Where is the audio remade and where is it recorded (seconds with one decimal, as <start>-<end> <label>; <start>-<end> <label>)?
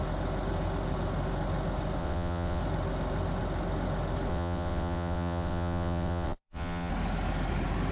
0.0-2.0 recorded; 2.0-2.6 remade; 2.6-4.3 recorded; 4.3-6.9 remade; 6.9-7.9 recorded